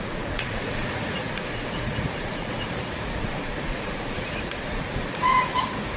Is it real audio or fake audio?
fake